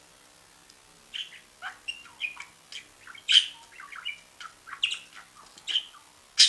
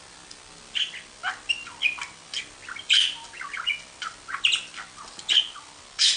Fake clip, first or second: second